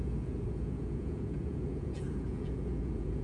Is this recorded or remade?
remade